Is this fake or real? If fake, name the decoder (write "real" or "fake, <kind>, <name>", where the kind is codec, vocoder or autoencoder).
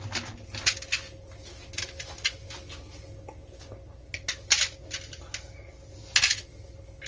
real